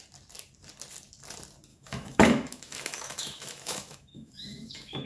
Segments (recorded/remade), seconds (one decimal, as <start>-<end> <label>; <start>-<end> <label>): 0.0-1.7 recorded; 1.7-5.1 remade